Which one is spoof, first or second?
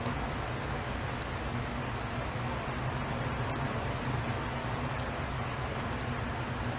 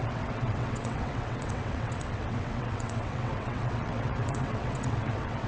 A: second